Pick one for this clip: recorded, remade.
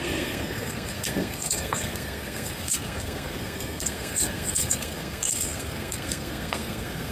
remade